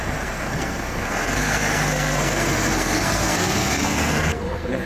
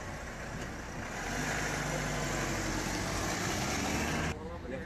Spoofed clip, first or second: first